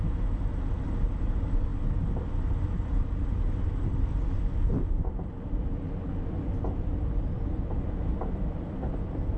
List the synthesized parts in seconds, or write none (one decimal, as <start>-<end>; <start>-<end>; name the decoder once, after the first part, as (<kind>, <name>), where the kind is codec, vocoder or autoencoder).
none